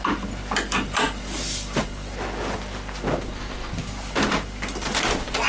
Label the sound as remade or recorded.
recorded